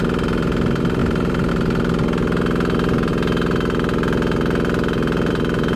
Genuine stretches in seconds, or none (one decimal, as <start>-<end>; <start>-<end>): 0.0-1.0; 1.5-5.8